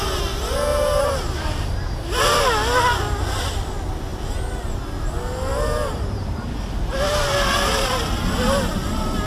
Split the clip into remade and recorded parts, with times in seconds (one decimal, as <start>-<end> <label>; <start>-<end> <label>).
0.0-0.7 recorded; 0.7-2.4 remade; 2.4-5.5 recorded; 5.5-6.5 remade; 6.5-9.3 recorded